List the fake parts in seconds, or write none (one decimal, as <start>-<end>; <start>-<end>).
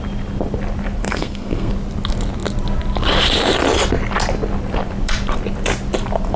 1.0-1.7